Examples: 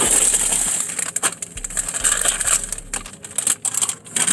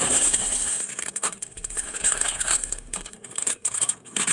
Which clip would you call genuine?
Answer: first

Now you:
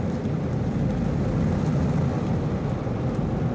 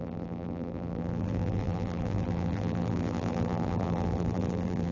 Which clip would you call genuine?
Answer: first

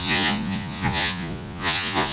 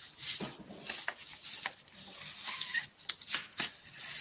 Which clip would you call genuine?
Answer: second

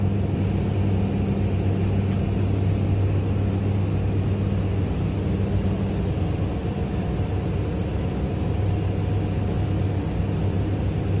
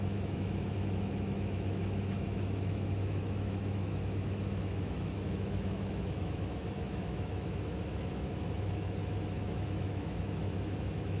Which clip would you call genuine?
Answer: first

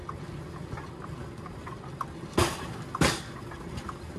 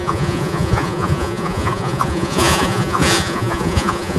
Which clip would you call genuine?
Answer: first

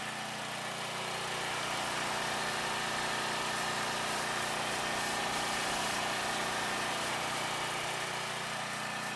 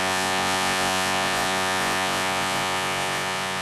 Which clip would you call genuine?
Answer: first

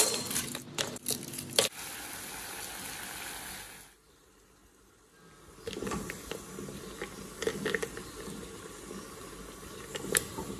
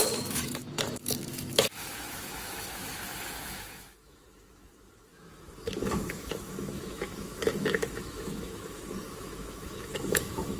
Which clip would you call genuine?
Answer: first